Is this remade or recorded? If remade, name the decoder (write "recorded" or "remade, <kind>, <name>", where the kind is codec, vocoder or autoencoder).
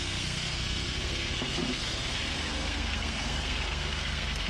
remade, codec, SNAC